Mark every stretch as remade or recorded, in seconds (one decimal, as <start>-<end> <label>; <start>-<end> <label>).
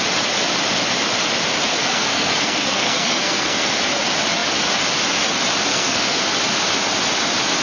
0.0-1.7 recorded; 1.7-3.8 remade; 3.8-5.7 recorded; 5.7-6.2 remade; 6.2-7.6 recorded